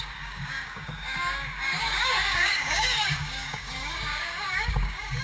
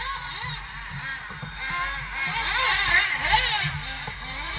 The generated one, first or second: first